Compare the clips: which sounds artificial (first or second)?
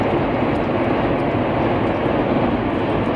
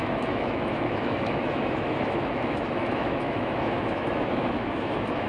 second